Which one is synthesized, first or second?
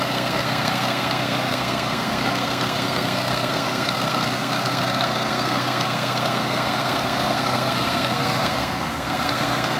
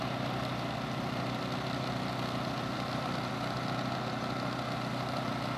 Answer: first